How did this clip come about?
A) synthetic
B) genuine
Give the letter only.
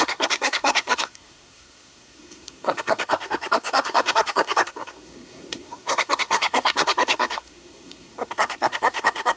A